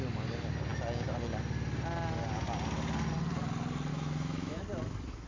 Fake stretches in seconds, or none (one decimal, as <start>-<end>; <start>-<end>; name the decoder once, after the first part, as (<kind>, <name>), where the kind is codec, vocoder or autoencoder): 3.9-4.6 (autoencoder, DAC-VAE)